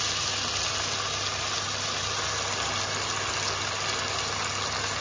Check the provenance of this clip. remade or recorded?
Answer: recorded